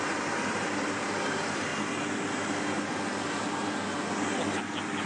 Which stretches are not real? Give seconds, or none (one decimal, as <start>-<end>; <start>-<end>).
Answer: 0.0-1.7